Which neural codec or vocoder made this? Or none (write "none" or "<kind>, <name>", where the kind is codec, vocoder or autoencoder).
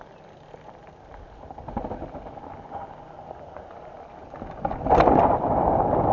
none